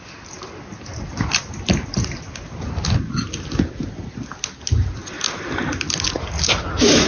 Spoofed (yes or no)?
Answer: no